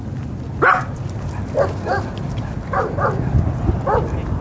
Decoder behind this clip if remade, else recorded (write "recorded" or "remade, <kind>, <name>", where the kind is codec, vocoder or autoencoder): recorded